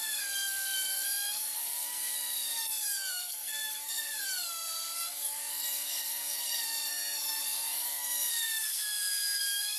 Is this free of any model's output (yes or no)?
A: no